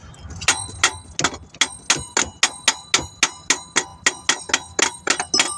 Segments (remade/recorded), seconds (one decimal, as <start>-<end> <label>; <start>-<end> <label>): 0.0-5.6 recorded